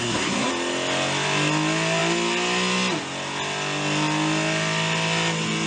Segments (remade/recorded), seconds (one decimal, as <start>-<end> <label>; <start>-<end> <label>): 0.0-0.5 remade; 0.5-5.7 recorded